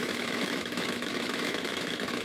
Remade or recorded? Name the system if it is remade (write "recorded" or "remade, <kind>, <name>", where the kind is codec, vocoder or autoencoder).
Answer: remade, autoencoder, DAC-VAE